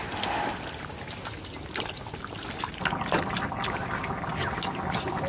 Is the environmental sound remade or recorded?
recorded